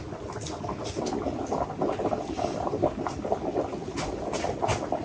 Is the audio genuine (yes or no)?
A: yes